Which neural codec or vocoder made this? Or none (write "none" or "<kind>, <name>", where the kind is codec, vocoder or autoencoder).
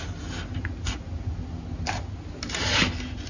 none